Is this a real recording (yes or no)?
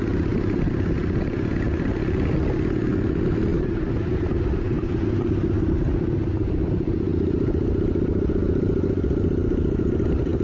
yes